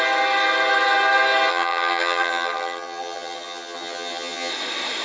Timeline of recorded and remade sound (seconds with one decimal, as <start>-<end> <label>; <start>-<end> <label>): 0.0-1.5 recorded; 1.5-4.5 remade; 4.5-5.0 recorded